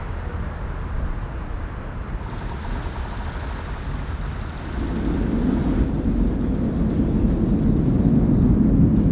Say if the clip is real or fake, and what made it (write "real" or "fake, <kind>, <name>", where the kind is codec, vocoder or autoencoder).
real